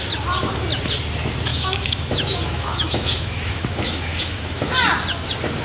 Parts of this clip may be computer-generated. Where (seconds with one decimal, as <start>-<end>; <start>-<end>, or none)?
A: 1.5-4.7